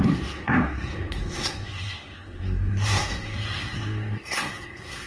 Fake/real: fake